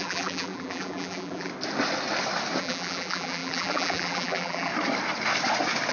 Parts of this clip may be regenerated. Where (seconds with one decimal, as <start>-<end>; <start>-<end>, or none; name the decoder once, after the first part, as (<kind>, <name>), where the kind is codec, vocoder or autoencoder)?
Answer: 0.0-1.5 (vocoder, BigVGAN v2); 2.6-4.7